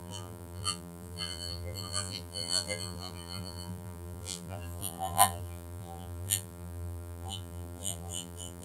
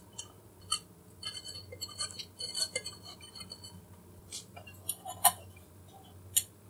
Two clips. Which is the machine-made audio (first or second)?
first